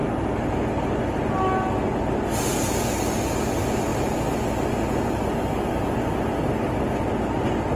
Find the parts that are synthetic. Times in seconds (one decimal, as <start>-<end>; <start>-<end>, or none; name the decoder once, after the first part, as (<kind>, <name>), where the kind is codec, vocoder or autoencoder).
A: none